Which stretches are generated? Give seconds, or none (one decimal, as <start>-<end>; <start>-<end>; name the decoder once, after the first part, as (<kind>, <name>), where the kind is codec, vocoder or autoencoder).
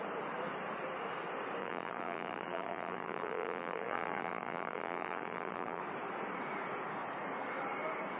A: 1.6-5.8 (vocoder, BigVGAN v2)